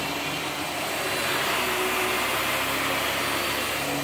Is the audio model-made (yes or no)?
no